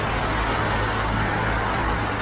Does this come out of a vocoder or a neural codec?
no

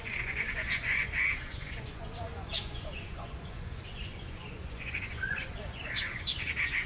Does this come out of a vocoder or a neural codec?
yes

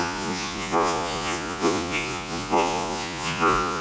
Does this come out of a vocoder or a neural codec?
yes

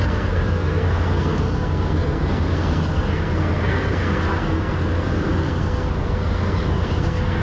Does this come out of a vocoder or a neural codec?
yes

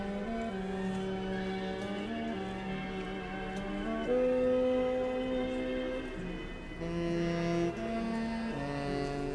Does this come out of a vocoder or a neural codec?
no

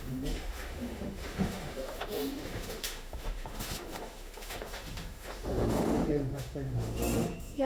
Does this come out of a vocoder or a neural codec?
yes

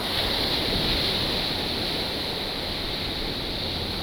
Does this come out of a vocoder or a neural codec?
no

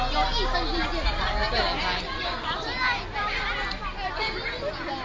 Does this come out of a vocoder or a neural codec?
no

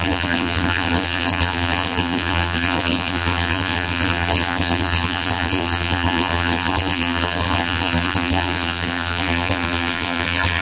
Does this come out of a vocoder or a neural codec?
yes